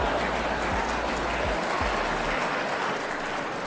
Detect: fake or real real